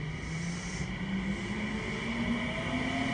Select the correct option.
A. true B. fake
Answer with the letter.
A